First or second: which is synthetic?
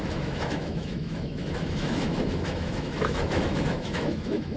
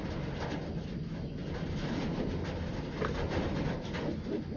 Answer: first